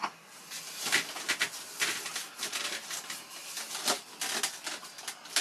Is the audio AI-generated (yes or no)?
no